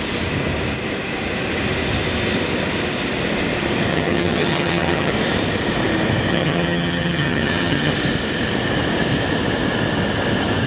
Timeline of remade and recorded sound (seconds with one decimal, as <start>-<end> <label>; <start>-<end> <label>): 0.0-3.9 recorded; 3.9-5.1 remade; 5.1-6.3 recorded; 6.3-7.9 remade; 7.9-10.7 recorded